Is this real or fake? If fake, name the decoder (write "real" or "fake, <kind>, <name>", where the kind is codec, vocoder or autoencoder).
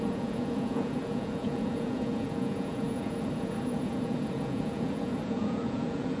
fake, vocoder, Vocos